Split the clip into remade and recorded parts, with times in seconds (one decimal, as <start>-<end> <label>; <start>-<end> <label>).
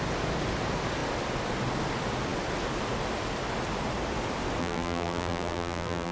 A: 0.0-4.6 recorded; 4.6-6.1 remade